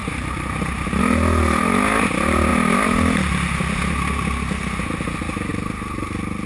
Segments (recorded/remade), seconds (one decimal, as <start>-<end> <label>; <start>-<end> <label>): 0.0-1.0 remade; 1.0-6.5 recorded